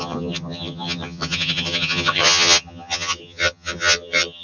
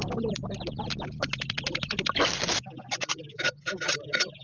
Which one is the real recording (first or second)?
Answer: second